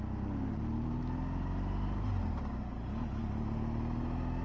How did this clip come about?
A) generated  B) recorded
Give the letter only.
B